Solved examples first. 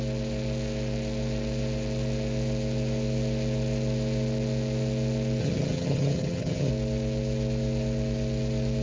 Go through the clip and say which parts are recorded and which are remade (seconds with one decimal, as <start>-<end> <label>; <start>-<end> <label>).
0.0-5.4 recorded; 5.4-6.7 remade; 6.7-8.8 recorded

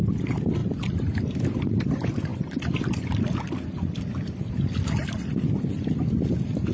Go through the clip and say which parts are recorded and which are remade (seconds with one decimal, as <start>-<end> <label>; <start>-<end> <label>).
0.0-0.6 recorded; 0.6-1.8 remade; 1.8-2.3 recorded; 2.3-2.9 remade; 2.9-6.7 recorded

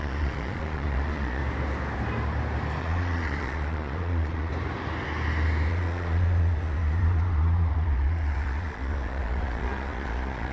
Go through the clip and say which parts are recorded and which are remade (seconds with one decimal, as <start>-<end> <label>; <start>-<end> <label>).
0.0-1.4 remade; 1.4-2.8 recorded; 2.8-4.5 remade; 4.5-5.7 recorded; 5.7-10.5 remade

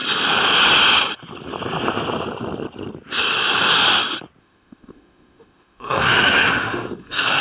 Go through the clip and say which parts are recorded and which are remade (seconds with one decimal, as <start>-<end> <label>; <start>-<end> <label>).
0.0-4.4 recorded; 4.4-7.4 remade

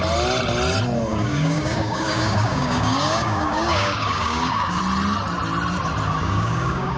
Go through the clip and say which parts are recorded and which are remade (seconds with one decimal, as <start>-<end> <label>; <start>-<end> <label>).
0.0-1.1 recorded; 1.1-4.8 remade; 4.8-6.2 recorded; 6.2-7.0 remade